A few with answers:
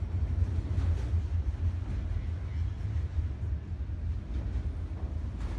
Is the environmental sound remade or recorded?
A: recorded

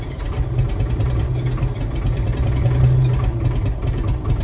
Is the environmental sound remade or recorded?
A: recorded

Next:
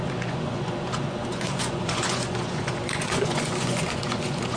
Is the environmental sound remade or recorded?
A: remade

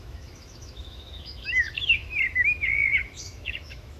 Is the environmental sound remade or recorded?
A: remade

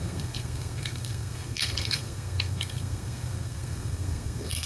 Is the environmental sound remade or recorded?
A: remade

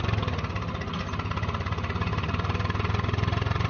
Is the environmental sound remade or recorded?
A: recorded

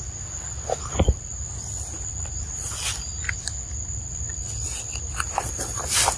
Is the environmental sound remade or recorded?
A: recorded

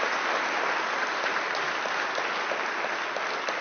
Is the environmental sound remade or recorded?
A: recorded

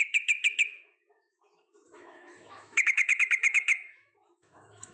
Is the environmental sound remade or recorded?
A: remade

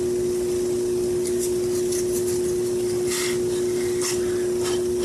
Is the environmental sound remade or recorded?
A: recorded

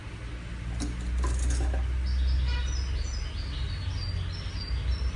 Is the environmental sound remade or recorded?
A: recorded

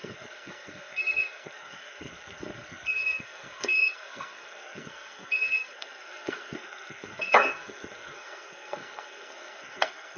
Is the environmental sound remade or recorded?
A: remade